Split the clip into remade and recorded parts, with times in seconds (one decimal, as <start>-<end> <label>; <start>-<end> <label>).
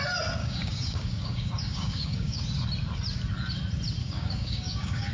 0.0-0.4 recorded; 0.4-2.4 remade; 2.4-4.0 recorded; 4.0-5.1 remade